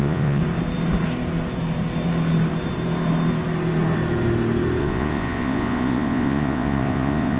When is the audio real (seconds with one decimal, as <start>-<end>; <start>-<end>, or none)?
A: 0.4-4.8

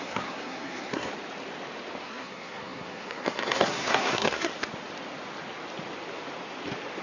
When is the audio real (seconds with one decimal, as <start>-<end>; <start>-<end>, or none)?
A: 1.1-2.0; 4.5-7.0

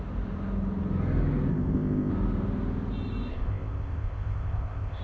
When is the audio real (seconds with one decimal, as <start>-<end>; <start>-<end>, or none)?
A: 0.0-1.5; 2.1-3.3

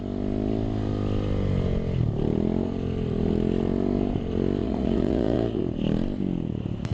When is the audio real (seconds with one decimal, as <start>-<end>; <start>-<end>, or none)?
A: 0.0-4.6; 5.6-6.9